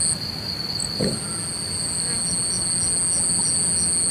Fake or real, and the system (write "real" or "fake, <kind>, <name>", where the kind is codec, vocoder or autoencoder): real